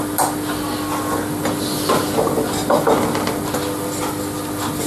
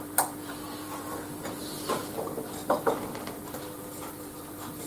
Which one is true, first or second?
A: first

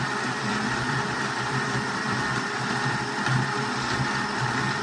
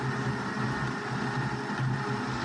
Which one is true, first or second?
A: second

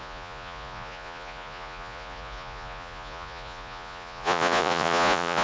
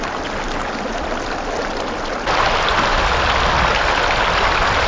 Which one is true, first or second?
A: second